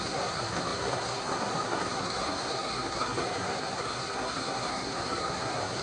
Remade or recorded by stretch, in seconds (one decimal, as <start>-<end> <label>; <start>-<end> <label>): 0.0-5.8 remade